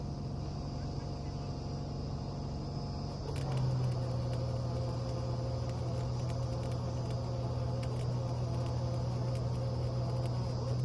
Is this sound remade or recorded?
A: recorded